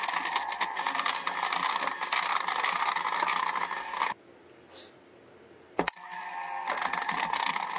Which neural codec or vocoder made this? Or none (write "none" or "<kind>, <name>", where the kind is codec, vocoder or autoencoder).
none